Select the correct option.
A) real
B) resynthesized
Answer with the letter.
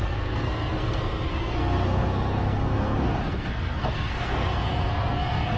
B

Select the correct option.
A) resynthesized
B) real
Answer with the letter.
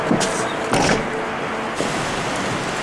B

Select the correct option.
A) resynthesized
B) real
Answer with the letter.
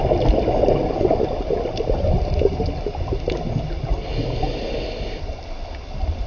B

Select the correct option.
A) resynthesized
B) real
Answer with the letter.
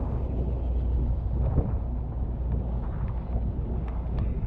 B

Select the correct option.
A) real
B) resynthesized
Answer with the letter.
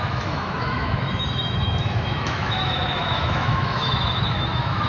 B